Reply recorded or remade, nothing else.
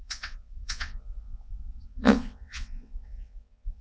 remade